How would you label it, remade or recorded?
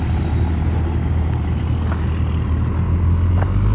recorded